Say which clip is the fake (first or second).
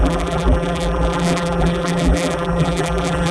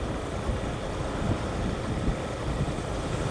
first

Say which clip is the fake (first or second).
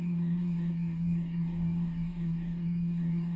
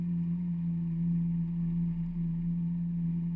first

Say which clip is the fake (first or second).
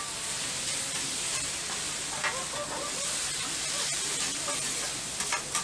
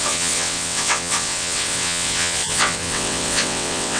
second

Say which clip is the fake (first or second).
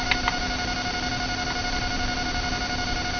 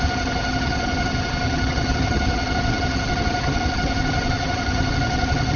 second